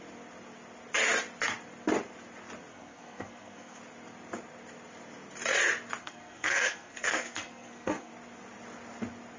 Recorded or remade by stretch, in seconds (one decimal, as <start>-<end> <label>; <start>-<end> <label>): 0.0-2.7 recorded; 2.7-3.8 remade; 3.8-6.0 recorded; 6.0-8.1 remade; 8.1-9.4 recorded